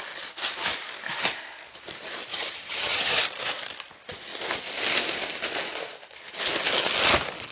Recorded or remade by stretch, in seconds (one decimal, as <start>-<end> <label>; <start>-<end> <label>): 0.0-2.3 recorded; 2.3-3.2 remade; 3.2-7.5 recorded